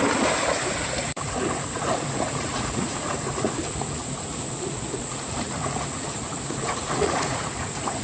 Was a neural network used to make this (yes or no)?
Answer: yes